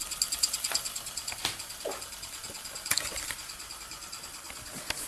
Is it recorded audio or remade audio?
recorded